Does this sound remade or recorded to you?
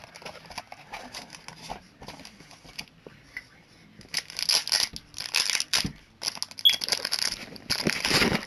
recorded